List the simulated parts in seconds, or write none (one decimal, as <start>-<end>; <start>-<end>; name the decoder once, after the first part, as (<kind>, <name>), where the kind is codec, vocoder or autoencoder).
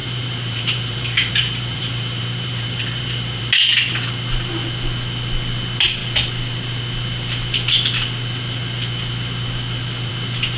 0.0-3.4 (vocoder, BigVGAN v2)